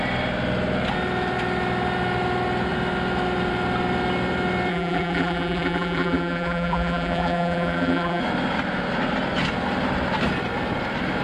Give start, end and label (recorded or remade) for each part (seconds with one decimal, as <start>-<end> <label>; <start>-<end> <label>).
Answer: 0.0-4.7 recorded; 4.7-8.2 remade; 8.2-11.2 recorded